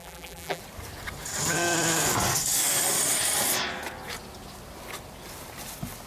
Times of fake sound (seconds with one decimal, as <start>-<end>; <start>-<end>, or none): 0.0-0.6